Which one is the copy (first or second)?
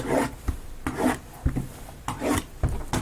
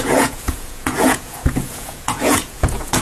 second